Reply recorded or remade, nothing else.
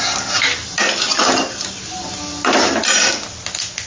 recorded